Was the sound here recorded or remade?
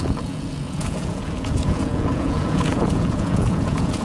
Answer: remade